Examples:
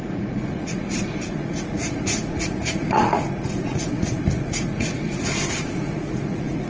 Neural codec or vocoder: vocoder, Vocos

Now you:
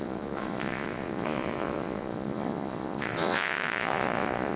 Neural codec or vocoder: vocoder, Vocos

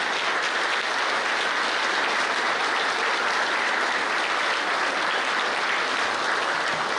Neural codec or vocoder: none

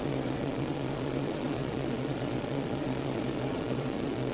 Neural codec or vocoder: vocoder, Vocos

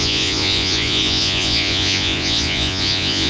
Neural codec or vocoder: vocoder, Vocos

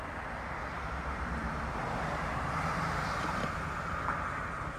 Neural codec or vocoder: none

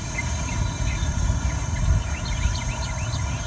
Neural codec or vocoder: vocoder, Vocos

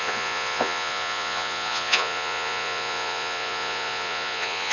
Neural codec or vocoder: vocoder, Vocos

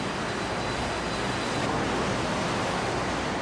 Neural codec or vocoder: none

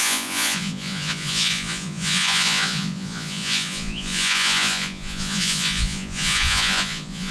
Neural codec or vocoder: vocoder, Vocos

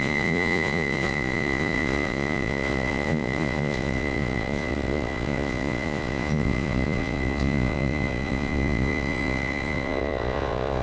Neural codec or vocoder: vocoder, Vocos